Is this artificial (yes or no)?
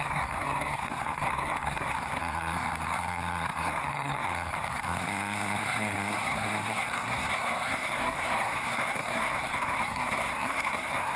yes